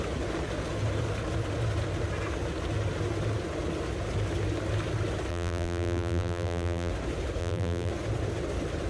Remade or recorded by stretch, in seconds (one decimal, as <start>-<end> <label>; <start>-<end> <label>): 0.0-5.3 recorded; 5.3-6.9 remade; 6.9-7.4 recorded; 7.4-7.9 remade; 7.9-8.9 recorded